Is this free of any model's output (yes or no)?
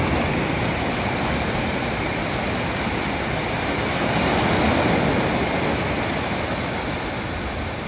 yes